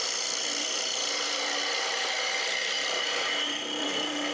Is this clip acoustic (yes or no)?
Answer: no